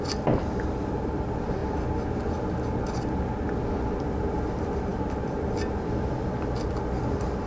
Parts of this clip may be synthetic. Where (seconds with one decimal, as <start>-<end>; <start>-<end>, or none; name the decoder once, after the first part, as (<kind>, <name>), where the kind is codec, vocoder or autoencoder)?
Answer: 0.0-1.6 (vocoder, BigVGAN v2); 4.0-7.5